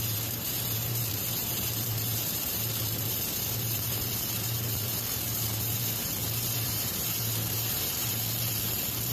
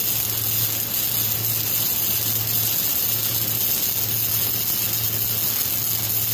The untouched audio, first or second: second